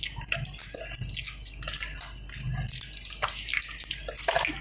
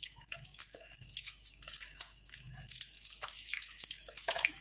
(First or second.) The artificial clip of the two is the second